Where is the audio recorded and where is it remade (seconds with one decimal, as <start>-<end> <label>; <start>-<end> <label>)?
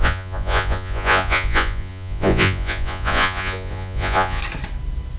0.0-4.4 remade; 4.4-5.2 recorded